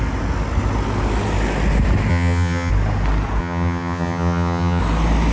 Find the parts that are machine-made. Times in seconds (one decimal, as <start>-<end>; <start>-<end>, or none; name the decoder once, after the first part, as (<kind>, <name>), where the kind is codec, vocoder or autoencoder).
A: 2.1-2.7 (vocoder, HiFi-GAN); 3.4-4.8